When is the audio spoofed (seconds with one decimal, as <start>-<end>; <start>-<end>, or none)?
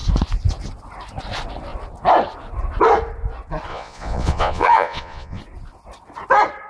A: 3.7-5.4